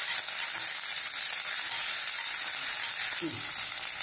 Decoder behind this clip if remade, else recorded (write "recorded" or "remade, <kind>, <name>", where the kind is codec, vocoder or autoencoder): remade, vocoder, BigVGAN v2